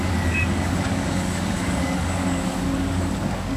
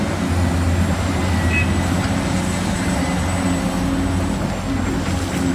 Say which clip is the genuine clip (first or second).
second